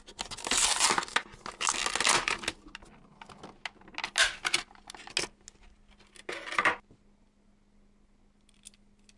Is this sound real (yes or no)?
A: yes